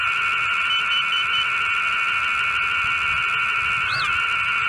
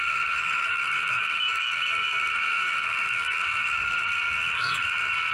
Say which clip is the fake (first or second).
second